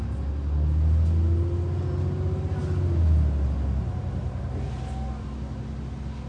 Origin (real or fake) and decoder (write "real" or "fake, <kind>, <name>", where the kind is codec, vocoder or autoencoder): real